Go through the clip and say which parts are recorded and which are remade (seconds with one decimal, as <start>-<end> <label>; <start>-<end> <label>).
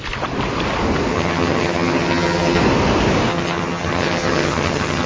0.0-1.1 recorded; 1.1-2.6 remade; 2.6-3.3 recorded; 3.3-5.1 remade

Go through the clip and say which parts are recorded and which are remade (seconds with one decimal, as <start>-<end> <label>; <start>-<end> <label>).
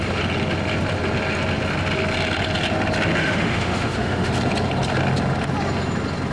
0.0-3.2 recorded; 3.2-4.3 remade; 4.3-6.3 recorded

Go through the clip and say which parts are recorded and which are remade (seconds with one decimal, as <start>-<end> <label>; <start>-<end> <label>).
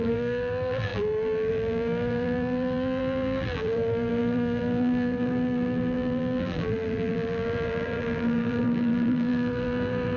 0.0-10.2 remade